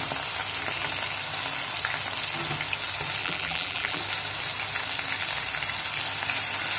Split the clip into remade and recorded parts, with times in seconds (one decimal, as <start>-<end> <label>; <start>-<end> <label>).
0.0-3.2 recorded; 3.2-4.0 remade; 4.0-6.8 recorded